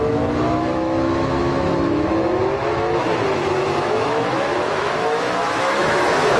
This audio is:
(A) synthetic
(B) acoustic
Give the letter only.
A